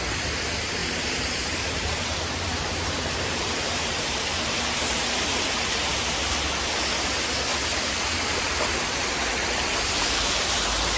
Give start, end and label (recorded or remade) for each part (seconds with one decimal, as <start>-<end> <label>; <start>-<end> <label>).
0.0-0.8 recorded; 0.8-4.9 remade; 4.9-11.0 recorded